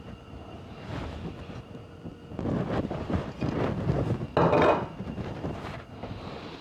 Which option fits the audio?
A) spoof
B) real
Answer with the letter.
B